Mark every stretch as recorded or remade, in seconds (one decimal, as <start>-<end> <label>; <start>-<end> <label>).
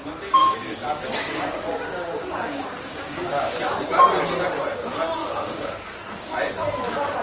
0.0-0.4 recorded; 0.4-3.6 remade; 3.6-5.2 recorded; 5.2-6.0 remade; 6.0-7.2 recorded